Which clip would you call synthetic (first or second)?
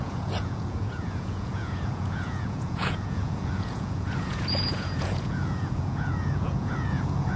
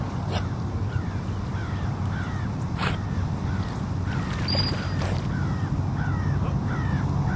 first